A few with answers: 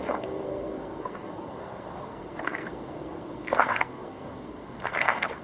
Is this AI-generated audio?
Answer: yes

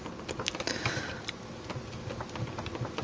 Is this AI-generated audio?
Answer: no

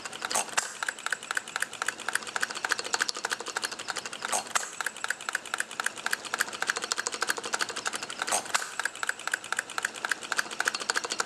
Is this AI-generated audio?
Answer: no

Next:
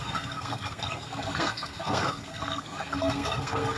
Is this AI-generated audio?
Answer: yes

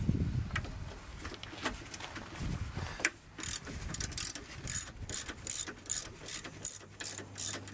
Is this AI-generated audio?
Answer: no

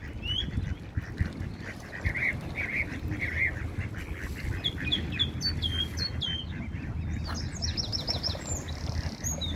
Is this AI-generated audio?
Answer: no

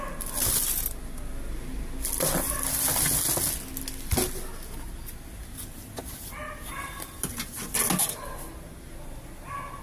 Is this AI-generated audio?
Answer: no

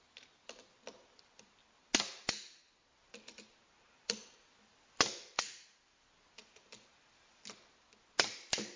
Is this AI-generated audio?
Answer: no